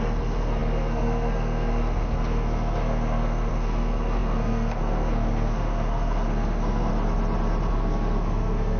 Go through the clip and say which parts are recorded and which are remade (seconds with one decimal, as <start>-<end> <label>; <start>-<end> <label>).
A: 0.0-6.9 remade; 6.9-7.7 recorded; 7.7-8.8 remade